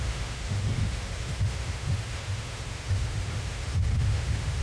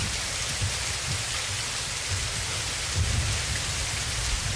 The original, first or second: second